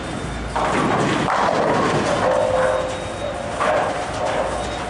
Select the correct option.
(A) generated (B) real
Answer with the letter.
B